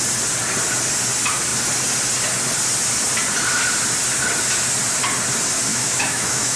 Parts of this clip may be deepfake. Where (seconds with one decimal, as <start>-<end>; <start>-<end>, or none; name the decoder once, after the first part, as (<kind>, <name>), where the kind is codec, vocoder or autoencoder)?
5.7-6.6 (autoencoder, DAC-VAE)